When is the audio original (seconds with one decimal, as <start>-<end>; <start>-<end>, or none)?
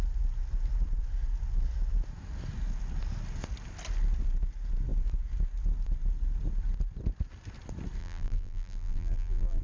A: 0.0-8.0